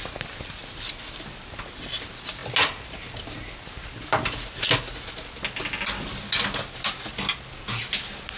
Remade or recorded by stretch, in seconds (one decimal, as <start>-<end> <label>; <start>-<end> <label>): 0.0-8.4 recorded